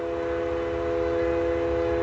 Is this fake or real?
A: real